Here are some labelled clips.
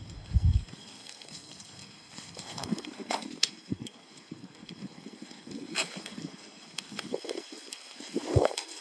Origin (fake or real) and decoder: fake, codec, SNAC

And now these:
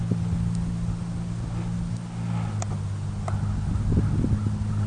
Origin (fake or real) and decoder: real